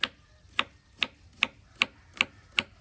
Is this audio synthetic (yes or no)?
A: no